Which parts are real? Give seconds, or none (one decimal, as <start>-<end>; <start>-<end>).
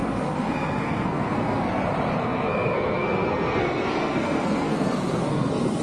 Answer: 1.8-2.2